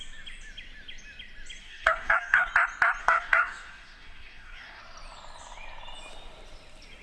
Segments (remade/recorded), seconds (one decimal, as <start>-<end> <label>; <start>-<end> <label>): 0.0-1.6 recorded; 1.6-2.5 remade; 2.5-3.0 recorded; 3.0-4.8 remade; 4.8-7.0 recorded